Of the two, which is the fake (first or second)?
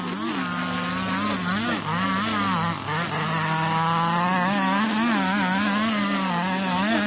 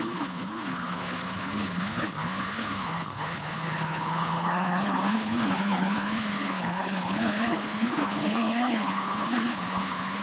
second